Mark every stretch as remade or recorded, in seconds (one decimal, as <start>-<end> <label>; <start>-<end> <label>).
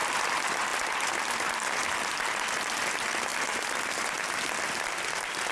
0.0-5.5 recorded